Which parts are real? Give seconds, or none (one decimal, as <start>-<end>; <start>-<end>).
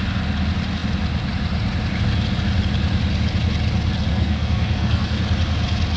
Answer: 0.0-4.1; 5.2-6.0